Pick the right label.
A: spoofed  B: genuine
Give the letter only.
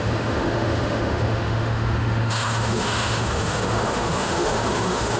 A